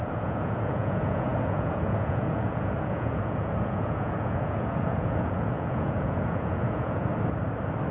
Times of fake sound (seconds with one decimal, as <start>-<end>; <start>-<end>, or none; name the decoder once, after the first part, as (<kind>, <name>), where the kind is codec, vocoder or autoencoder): 0.0-7.1 (vocoder, Vocos)